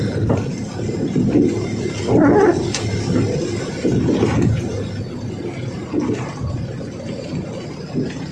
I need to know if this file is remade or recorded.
recorded